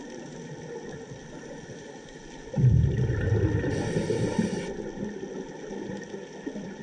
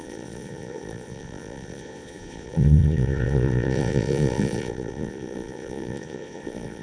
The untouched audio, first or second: first